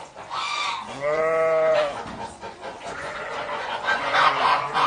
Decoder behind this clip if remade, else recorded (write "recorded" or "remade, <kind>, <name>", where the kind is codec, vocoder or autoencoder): remade, vocoder, Vocos